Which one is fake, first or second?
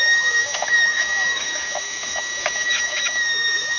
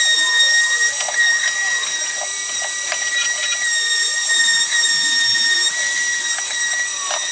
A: first